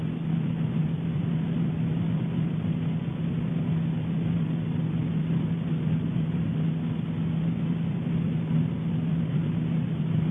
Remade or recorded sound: recorded